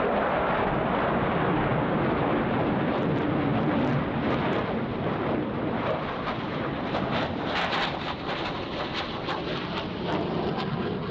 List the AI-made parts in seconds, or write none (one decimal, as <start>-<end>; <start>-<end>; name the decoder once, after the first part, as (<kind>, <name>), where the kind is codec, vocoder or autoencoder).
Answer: 1.7-2.9 (vocoder, BigVGAN v2); 3.5-4.2; 4.9-10.0